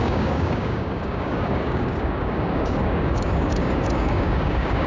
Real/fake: fake